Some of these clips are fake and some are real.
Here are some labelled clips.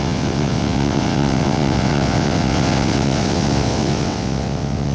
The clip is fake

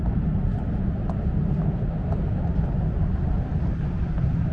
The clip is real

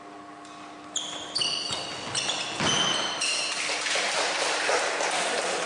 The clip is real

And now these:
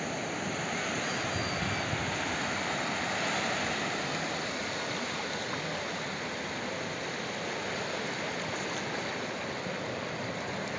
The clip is real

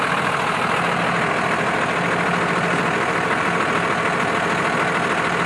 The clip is real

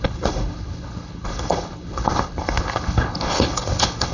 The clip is fake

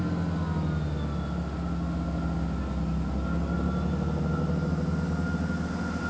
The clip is real